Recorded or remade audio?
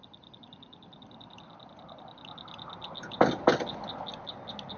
recorded